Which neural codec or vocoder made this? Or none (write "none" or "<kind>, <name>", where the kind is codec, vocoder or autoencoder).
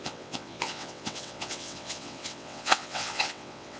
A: vocoder, WaveNeXt